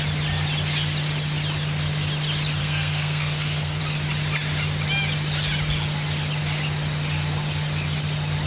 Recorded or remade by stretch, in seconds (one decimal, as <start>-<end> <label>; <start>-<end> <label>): 0.0-2.6 recorded; 2.6-3.8 remade; 3.8-8.5 recorded